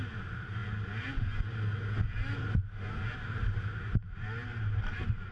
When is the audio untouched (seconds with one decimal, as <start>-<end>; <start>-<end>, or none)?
0.0-5.3